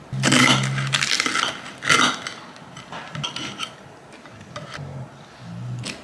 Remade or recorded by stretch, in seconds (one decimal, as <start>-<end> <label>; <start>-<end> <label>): 0.0-6.0 recorded

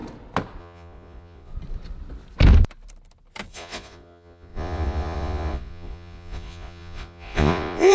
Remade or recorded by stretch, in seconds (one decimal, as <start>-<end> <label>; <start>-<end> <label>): 0.0-0.6 recorded; 0.6-1.5 remade; 1.5-3.5 recorded; 3.5-7.9 remade

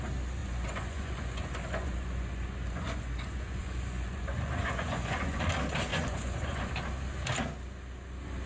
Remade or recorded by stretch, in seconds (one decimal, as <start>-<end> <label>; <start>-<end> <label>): 0.0-0.4 recorded; 0.4-5.5 remade; 5.5-5.9 recorded; 5.9-6.7 remade; 6.7-8.5 recorded

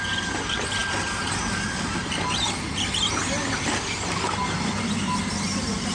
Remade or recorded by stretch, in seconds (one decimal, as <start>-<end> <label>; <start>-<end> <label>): 0.0-5.9 recorded

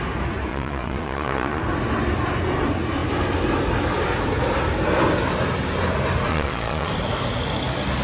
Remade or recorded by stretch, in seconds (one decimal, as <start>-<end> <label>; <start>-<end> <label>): 0.0-0.5 recorded; 0.5-1.6 remade; 1.6-6.3 recorded; 6.3-6.9 remade; 6.9-8.0 recorded

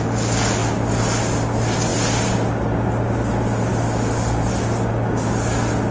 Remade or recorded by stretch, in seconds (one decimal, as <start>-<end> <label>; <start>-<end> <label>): 0.0-5.9 recorded